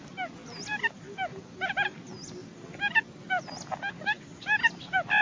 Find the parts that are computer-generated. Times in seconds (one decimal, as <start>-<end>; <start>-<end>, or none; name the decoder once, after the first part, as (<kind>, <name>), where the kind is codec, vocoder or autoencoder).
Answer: none